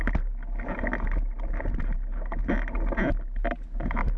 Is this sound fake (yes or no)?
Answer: no